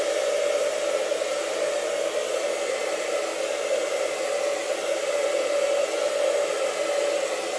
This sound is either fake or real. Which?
real